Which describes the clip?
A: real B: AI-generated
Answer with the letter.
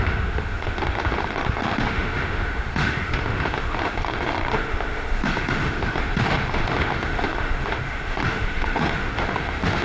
B